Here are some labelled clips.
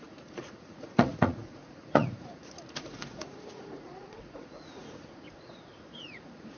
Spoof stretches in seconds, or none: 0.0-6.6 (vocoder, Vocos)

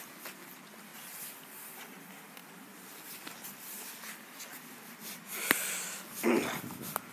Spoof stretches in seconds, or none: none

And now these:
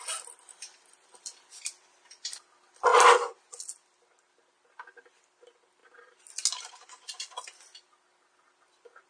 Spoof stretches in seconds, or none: none